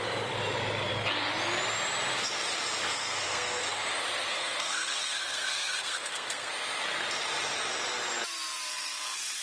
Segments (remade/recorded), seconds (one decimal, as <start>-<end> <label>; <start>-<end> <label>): 0.0-2.8 recorded; 2.8-3.8 remade; 3.8-4.3 recorded; 4.3-6.5 remade; 6.5-8.7 recorded; 8.7-9.4 remade